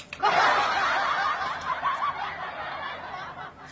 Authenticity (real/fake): real